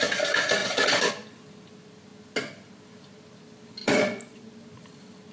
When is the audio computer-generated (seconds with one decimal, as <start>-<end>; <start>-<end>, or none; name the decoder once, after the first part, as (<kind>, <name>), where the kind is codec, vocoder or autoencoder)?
0.6-1.1 (vocoder, Vocos); 3.8-4.5